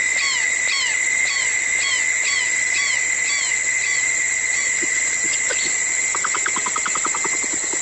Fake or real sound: real